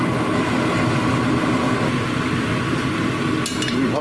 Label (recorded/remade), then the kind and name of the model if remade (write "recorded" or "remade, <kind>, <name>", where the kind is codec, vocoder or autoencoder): recorded